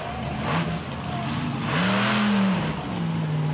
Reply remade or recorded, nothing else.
recorded